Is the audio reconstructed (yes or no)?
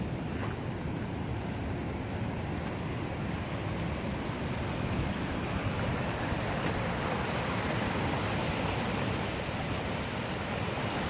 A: no